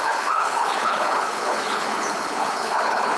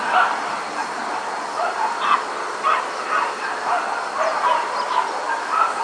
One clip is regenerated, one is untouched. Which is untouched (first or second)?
second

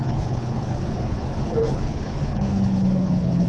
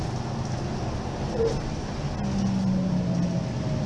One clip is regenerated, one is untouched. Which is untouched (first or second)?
second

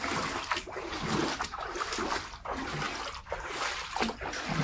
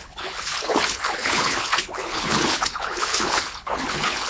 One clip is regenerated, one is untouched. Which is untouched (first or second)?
first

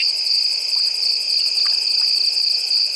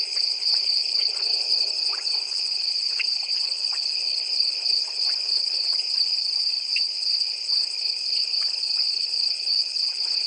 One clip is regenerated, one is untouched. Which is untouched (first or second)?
first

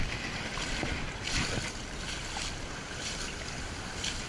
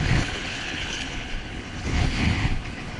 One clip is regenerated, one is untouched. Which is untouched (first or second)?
first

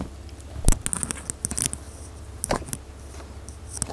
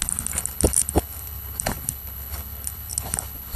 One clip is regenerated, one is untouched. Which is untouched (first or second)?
first